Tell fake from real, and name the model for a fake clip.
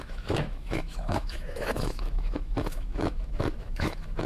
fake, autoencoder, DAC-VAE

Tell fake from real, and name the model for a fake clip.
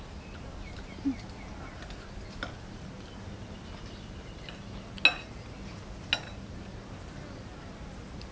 real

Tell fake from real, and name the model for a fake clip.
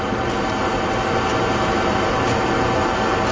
real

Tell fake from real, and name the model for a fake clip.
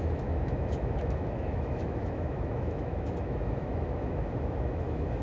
fake, autoencoder, DAC-VAE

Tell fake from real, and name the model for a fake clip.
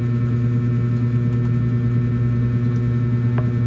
real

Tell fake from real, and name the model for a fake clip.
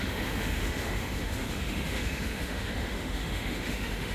fake, autoencoder, DAC-VAE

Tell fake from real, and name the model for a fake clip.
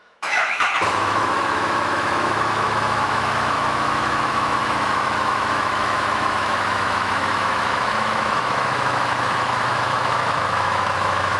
fake, autoencoder, DAC-VAE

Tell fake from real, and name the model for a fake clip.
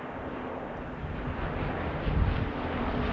real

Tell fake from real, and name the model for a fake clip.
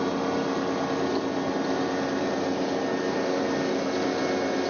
real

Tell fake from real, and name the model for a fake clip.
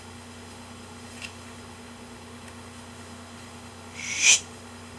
fake, autoencoder, DAC-VAE